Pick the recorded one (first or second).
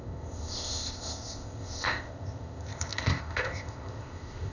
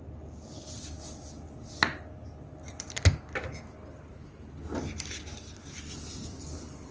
second